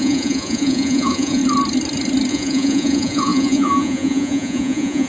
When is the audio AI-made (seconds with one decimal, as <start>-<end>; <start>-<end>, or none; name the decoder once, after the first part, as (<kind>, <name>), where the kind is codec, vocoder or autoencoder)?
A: 0.0-1.4 (vocoder, Vocos); 2.3-5.1